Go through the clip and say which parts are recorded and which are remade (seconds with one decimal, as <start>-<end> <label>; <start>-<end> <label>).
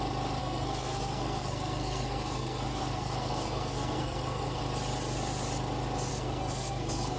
0.0-0.4 recorded; 0.4-4.6 remade; 4.6-6.1 recorded; 6.1-7.2 remade